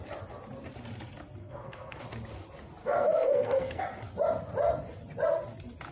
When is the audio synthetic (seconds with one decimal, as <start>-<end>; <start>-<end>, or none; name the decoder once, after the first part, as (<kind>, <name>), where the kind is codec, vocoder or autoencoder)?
1.4-2.0 (codec, SNAC); 2.8-3.8